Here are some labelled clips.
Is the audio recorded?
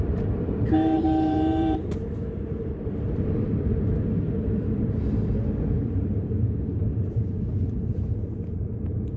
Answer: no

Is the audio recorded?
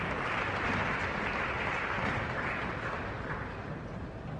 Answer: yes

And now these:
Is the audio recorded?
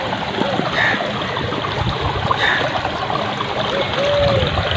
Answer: yes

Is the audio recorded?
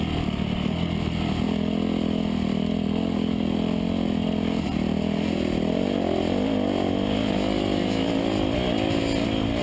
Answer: yes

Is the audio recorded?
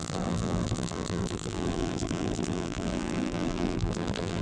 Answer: no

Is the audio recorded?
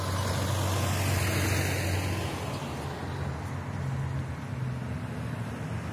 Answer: yes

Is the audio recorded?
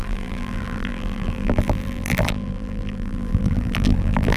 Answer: no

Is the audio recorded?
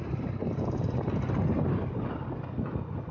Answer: yes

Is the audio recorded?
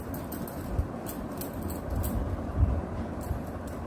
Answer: yes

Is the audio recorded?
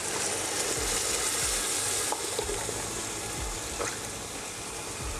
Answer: yes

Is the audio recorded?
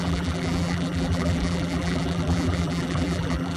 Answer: no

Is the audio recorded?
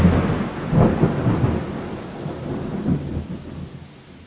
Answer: yes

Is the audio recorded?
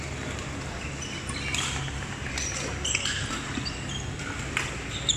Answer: yes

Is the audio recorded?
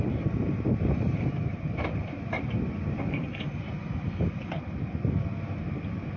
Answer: no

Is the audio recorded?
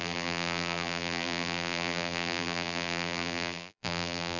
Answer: no